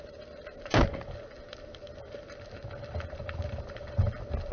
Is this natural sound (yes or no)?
yes